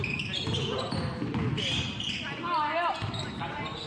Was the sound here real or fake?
real